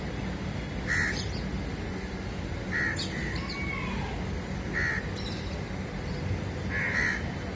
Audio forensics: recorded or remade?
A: recorded